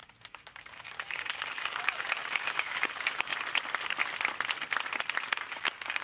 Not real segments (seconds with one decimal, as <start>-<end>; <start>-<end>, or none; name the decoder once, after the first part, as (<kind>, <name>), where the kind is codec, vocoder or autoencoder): 0.0-3.3 (codec, DAC); 5.3-6.0